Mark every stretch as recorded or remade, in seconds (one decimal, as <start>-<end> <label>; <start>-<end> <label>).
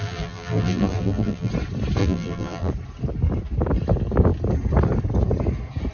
0.0-1.5 remade; 1.5-2.0 recorded; 2.0-2.7 remade; 2.7-5.9 recorded